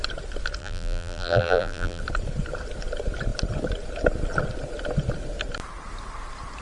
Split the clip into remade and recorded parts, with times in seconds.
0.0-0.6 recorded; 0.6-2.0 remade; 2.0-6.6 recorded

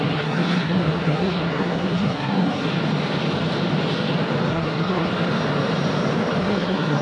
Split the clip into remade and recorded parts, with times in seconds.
0.0-2.7 remade; 2.7-4.5 recorded; 4.5-5.1 remade; 5.1-6.4 recorded; 6.4-7.0 remade

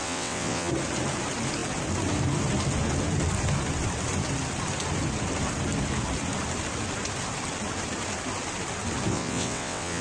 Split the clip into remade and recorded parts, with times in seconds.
0.0-0.7 remade; 0.7-9.1 recorded; 9.1-10.0 remade

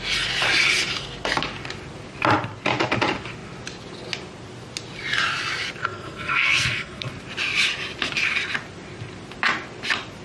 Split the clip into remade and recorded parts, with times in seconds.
0.0-5.8 recorded; 5.8-7.1 remade; 7.1-10.2 recorded

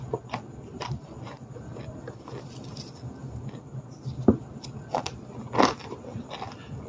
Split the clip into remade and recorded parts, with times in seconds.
0.0-0.7 recorded; 0.7-1.7 remade; 1.7-6.9 recorded

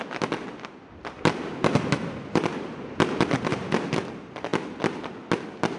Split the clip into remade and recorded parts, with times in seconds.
0.0-5.8 recorded